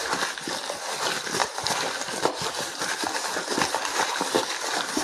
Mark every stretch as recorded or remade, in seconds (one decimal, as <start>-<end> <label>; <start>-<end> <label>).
0.0-1.4 recorded; 1.4-4.4 remade; 4.4-5.0 recorded